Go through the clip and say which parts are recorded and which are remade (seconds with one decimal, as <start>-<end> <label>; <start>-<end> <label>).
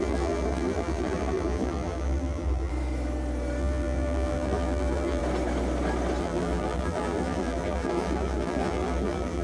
0.0-2.7 remade; 2.7-3.6 recorded; 3.6-5.2 remade; 5.2-6.2 recorded; 6.2-9.4 remade